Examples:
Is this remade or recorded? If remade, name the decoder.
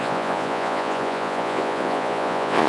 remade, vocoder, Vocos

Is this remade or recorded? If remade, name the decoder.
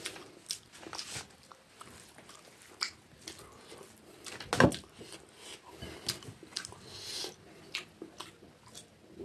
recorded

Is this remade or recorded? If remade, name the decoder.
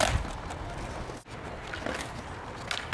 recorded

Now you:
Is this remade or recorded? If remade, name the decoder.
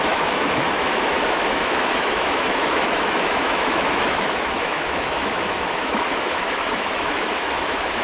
remade, autoencoder, DAC-VAE